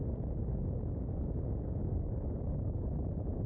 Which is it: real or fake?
fake